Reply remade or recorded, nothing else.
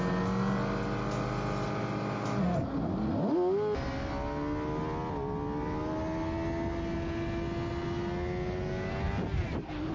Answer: recorded